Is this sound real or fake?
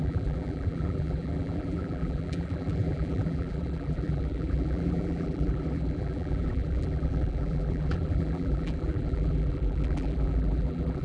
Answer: fake